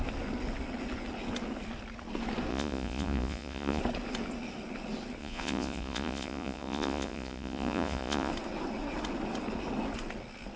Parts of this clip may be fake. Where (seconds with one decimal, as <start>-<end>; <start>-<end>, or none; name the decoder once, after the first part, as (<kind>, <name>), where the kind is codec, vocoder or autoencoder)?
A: 2.5-3.8 (vocoder, Vocos); 5.2-8.3

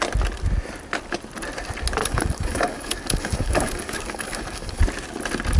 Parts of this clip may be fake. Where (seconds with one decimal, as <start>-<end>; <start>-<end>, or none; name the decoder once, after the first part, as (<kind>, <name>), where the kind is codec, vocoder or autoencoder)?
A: 2.0-4.8 (codec, DAC)

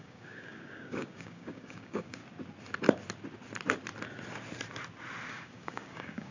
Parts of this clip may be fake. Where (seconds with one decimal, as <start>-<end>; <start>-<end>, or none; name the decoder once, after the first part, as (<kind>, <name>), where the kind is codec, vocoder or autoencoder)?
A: 0.0-2.2 (codec, DAC); 5.3-6.3

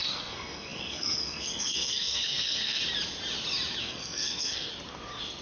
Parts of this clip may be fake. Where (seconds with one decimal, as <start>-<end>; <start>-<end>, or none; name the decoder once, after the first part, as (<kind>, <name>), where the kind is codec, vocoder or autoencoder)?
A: 0.0-2.8 (codec, SNAC); 3.8-4.7

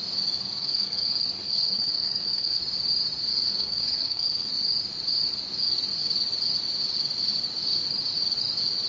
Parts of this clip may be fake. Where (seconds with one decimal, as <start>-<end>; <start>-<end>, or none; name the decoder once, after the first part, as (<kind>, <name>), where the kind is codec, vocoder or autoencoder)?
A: 0.5-2.6 (codec, SNAC); 3.3-4.5

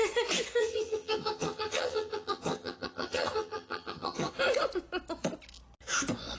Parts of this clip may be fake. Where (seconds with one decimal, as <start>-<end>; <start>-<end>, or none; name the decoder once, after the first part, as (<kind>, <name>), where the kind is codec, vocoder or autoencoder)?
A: 0.6-4.4 (vocoder, HiFi-GAN)

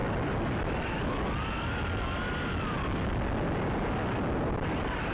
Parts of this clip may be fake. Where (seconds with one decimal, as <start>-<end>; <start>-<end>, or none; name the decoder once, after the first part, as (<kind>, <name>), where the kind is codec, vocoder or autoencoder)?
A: none

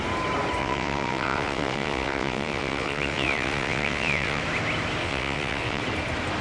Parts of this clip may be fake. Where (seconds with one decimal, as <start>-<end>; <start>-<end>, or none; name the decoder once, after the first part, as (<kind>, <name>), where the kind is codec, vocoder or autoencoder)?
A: 0.6-4.4 (vocoder, WaveNeXt); 5.0-5.8